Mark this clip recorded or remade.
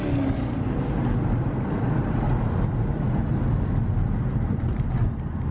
recorded